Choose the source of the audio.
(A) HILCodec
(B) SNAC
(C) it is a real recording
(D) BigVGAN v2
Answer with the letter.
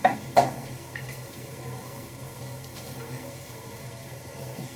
B